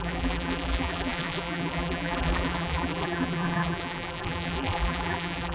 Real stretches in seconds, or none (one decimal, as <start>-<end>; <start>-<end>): none